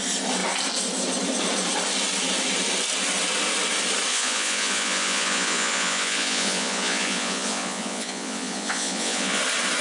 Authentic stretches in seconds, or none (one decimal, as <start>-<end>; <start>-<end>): 0.0-4.1; 9.4-9.8